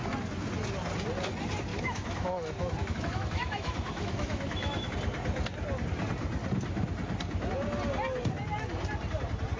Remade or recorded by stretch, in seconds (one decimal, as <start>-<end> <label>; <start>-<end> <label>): 0.0-1.7 recorded; 1.7-4.9 remade; 4.9-9.6 recorded